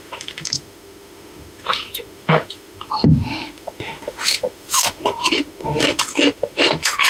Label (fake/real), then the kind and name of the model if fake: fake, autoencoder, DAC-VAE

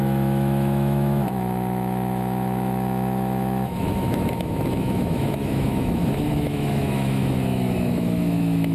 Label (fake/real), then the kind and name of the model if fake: fake, autoencoder, DAC-VAE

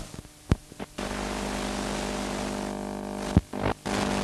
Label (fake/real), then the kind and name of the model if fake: real